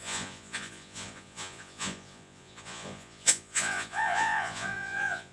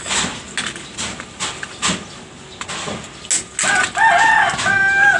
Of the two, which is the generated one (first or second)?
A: first